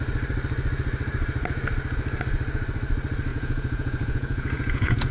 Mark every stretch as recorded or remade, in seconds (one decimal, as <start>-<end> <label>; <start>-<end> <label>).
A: 0.0-3.3 recorded; 3.3-5.1 remade